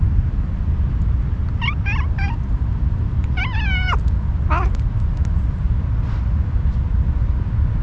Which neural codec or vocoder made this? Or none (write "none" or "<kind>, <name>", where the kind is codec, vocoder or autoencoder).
none